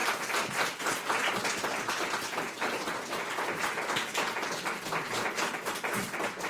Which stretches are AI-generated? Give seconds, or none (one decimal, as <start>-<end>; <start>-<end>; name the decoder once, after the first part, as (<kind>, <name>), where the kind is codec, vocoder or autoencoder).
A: none